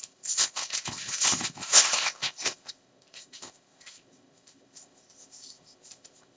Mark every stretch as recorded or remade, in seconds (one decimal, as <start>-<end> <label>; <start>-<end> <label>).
0.0-6.4 remade